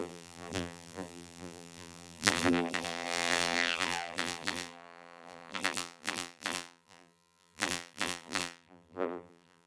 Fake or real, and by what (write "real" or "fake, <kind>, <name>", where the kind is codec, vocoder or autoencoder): fake, vocoder, BigVGAN v2